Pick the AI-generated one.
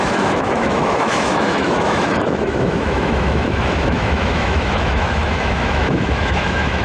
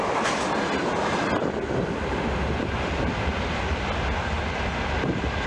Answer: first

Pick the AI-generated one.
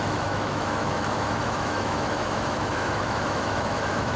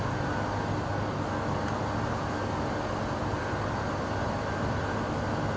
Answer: first